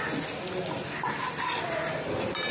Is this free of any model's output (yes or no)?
yes